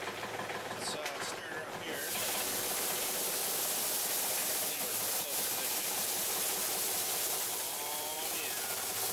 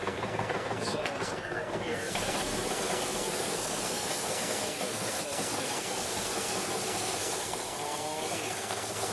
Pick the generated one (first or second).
second